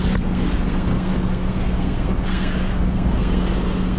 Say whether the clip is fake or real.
fake